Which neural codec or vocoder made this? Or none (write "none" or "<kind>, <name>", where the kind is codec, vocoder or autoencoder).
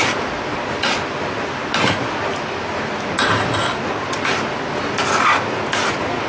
none